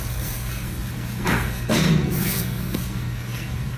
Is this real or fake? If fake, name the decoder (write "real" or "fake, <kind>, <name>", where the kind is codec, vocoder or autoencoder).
fake, codec, SNAC